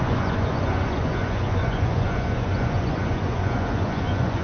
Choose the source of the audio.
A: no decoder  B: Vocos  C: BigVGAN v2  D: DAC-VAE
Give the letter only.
B